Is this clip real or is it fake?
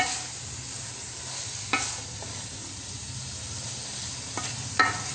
real